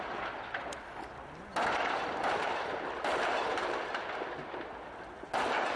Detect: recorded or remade recorded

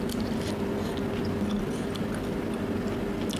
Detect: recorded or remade recorded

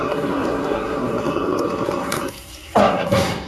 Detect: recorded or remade remade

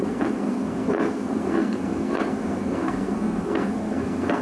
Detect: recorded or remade remade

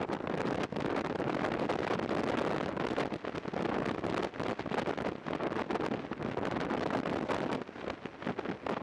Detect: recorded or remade recorded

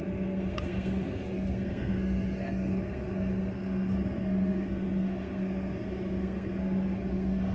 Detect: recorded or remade remade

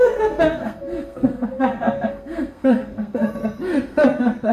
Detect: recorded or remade remade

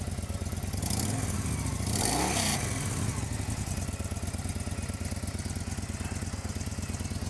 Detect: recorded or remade recorded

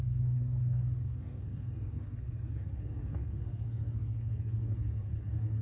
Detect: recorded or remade remade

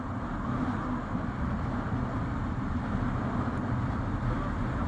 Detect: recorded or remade recorded